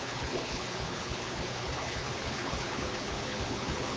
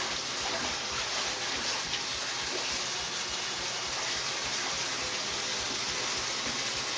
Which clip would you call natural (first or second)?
second